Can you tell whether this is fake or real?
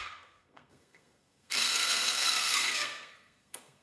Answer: fake